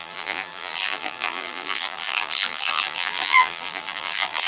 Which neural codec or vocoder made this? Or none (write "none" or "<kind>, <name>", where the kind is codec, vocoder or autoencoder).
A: vocoder, BigVGAN v2